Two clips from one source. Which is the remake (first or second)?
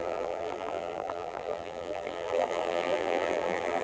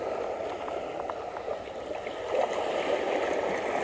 first